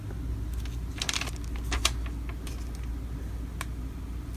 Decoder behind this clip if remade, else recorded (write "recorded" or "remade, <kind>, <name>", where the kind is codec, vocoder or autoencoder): recorded